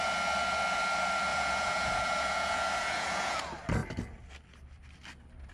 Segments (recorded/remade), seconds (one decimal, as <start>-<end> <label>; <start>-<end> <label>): 0.0-1.3 recorded; 1.3-3.4 remade; 3.4-5.5 recorded